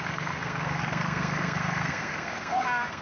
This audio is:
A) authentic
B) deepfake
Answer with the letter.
B